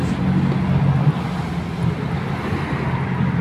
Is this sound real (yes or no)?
yes